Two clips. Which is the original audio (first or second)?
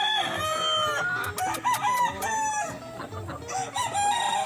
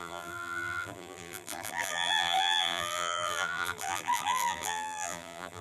first